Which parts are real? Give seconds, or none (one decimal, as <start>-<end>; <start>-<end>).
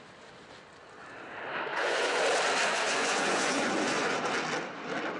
0.0-1.7; 2.2-2.7; 4.2-5.2